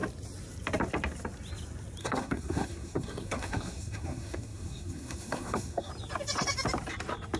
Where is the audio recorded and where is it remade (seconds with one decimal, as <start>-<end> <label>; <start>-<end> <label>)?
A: 0.0-2.0 recorded; 2.0-5.9 remade; 5.9-7.4 recorded